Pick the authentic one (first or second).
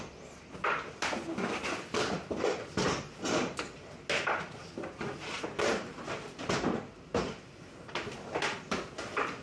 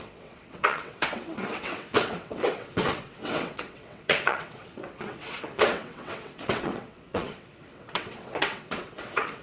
first